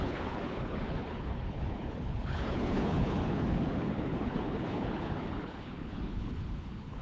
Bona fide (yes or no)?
no